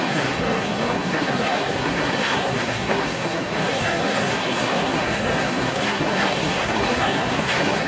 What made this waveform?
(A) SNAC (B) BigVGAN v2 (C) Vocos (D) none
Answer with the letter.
A